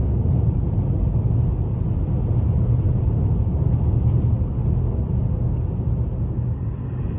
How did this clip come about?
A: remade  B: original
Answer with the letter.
B